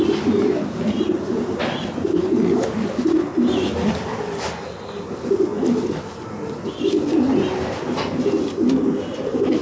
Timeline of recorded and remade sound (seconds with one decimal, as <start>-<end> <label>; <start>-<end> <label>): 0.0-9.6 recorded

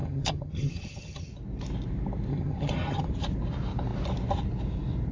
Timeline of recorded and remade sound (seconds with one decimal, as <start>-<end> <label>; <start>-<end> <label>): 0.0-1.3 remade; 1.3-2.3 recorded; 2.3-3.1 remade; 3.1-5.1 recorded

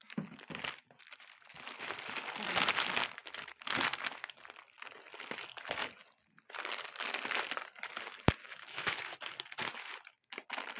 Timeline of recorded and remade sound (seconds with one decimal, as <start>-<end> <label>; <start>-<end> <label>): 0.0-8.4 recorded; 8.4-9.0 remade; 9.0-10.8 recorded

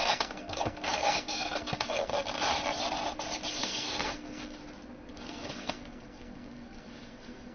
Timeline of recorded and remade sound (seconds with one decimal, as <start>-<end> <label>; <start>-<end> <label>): 0.0-2.1 remade; 2.1-3.5 recorded; 3.5-4.6 remade; 4.6-5.1 recorded; 5.1-7.5 remade